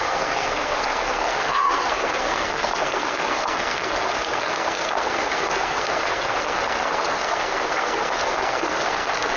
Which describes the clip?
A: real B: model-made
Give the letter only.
B